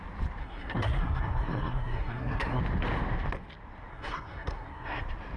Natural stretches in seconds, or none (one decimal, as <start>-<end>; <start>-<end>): 0.0-0.4; 2.6-3.9; 5.0-5.4